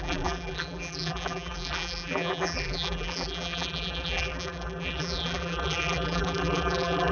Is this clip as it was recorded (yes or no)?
no